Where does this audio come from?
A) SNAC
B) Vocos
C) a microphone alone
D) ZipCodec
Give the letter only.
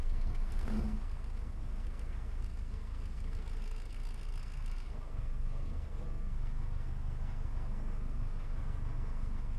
A